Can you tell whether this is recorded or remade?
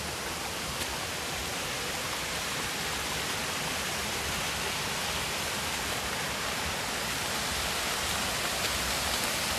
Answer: recorded